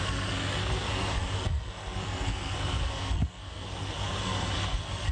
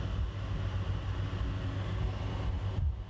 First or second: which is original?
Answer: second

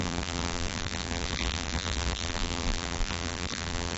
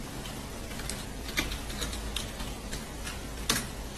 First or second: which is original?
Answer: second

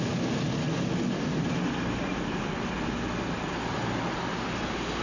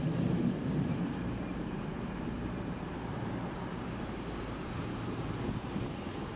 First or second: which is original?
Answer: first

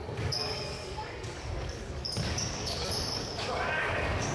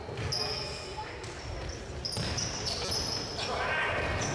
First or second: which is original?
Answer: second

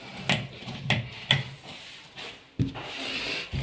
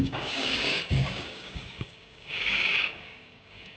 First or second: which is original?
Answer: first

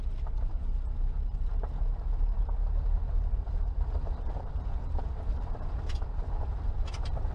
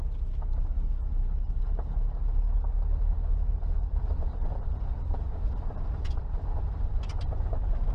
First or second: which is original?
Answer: second